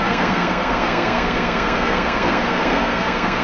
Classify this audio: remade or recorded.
remade